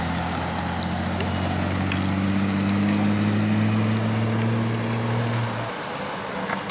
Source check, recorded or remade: recorded